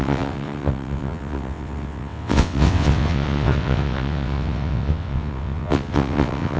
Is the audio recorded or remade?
remade